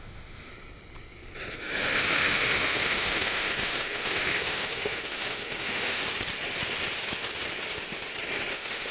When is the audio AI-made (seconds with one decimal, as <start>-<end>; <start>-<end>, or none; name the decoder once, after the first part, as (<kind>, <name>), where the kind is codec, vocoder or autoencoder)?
0.0-0.5 (autoencoder, DAC-VAE); 1.6-6.0; 8.5-8.9